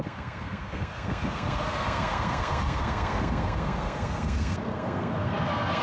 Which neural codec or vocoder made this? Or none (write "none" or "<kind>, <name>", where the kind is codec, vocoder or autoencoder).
codec, SNAC